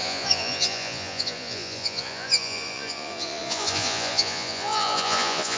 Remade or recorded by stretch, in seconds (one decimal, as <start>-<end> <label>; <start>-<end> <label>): 0.0-5.6 remade